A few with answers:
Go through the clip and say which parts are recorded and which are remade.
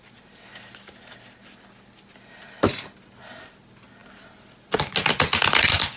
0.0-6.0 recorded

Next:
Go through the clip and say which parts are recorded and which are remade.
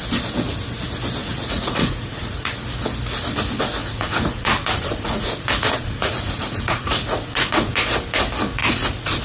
0.0-1.2 recorded; 1.2-2.5 remade; 2.5-3.8 recorded; 3.8-7.7 remade; 7.7-8.6 recorded; 8.6-9.2 remade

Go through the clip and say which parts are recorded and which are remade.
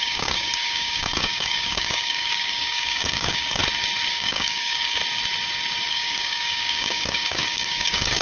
0.0-3.6 remade; 3.6-4.1 recorded; 4.1-5.0 remade; 5.0-5.9 recorded; 5.9-8.2 remade